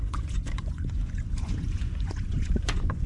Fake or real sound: fake